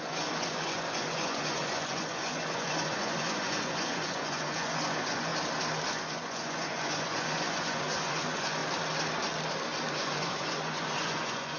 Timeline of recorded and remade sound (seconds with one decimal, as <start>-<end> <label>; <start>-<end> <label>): 0.0-5.3 remade; 5.3-5.9 recorded; 5.9-8.6 remade; 8.6-9.9 recorded; 9.9-11.6 remade